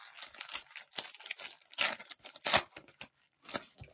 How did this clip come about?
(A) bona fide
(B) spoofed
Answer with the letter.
A